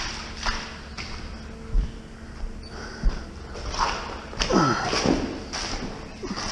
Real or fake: real